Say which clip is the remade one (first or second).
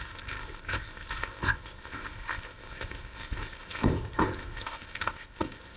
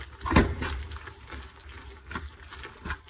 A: first